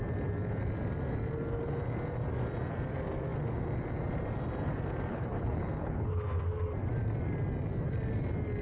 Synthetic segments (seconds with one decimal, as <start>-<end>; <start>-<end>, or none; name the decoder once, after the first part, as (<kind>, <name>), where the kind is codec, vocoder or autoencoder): 5.1-6.2 (codec, HILCodec)